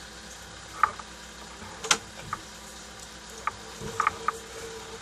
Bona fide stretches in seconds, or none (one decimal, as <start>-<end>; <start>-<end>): 0.0-5.0